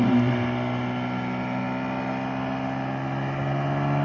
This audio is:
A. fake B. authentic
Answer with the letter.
B